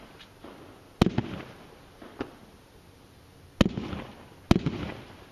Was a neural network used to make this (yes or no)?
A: no